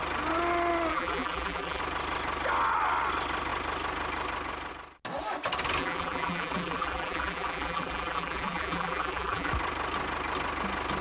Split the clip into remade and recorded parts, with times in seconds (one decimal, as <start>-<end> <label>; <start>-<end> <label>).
0.0-0.9 recorded; 0.9-1.8 remade; 1.8-5.8 recorded; 5.8-9.5 remade; 9.5-11.0 recorded